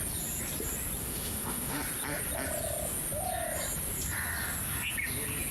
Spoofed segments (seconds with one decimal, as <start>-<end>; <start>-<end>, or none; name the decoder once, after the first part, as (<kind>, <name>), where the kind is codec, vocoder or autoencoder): 1.0-1.8 (autoencoder, DAC-VAE)